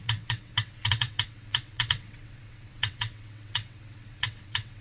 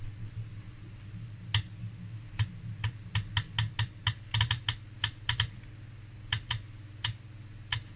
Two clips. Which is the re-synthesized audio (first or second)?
first